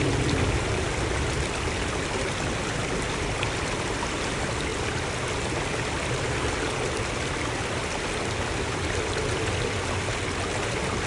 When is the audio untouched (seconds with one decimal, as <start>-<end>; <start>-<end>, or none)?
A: 0.0-11.1